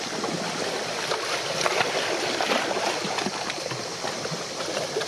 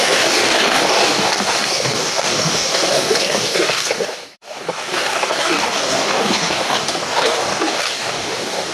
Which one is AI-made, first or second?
second